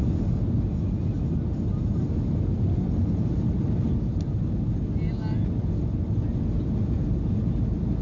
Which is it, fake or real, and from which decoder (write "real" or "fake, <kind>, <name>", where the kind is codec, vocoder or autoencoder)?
real